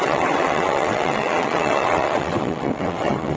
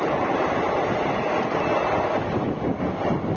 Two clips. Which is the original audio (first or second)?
second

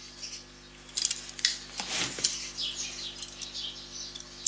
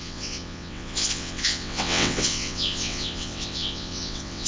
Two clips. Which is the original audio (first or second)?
first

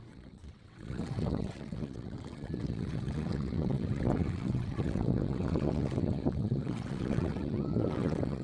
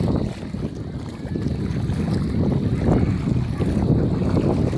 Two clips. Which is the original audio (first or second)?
second